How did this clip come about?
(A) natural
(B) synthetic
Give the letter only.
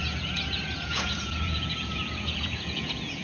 B